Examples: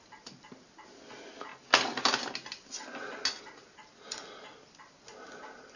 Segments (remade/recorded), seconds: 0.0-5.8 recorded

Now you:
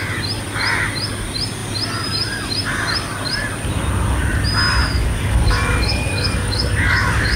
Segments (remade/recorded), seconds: 0.0-4.8 recorded; 4.8-7.4 remade

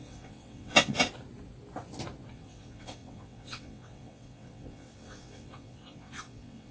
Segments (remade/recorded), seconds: 0.0-1.1 remade; 1.1-2.3 recorded; 2.3-6.7 remade

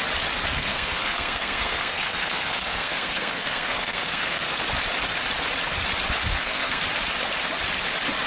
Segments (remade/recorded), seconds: 0.0-0.6 recorded; 0.6-4.6 remade; 4.6-6.3 recorded; 6.3-6.8 remade; 6.8-8.3 recorded

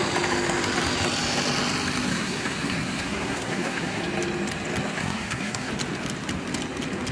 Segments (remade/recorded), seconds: 0.0-2.1 recorded; 2.1-4.0 remade; 4.0-5.0 recorded; 5.0-5.7 remade; 5.7-7.1 recorded

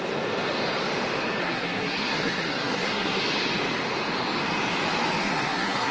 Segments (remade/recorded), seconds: 0.0-1.4 recorded; 1.4-3.2 remade; 3.2-5.2 recorded; 5.2-5.9 remade

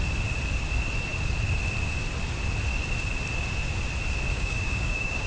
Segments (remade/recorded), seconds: 0.0-4.3 recorded; 4.3-5.3 remade

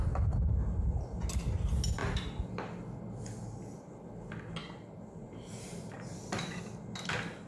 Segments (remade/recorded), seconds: 0.0-2.0 recorded; 2.0-2.5 remade; 2.5-4.6 recorded; 4.6-6.6 remade; 6.6-7.5 recorded